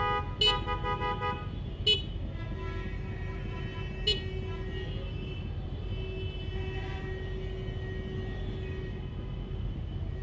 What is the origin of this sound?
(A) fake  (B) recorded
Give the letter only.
B